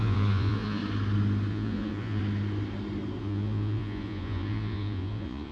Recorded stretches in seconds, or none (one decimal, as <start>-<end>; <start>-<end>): 0.8-1.5; 2.2-3.2